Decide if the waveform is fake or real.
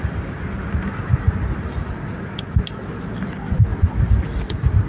real